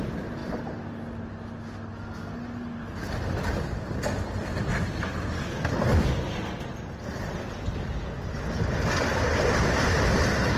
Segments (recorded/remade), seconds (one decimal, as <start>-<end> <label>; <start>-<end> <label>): 0.0-10.6 recorded